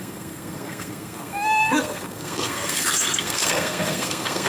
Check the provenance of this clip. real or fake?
fake